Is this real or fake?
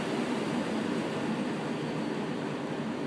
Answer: real